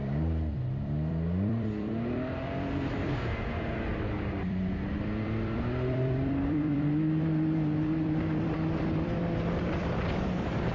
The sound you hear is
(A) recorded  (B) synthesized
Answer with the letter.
B